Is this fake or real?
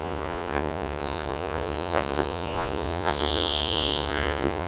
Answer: fake